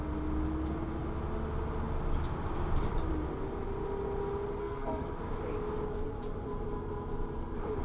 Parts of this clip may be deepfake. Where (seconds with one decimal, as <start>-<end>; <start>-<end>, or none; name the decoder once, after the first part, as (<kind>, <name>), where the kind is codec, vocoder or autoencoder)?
4.6-5.2 (codec, SNAC)